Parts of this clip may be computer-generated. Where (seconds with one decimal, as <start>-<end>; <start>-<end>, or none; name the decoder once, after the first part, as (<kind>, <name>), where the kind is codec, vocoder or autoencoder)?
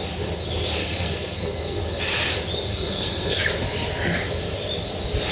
0.8-2.0 (codec, SNAC); 2.7-3.4